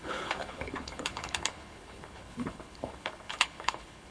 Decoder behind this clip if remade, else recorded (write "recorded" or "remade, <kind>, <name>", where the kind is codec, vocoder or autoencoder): remade, codec, HILCodec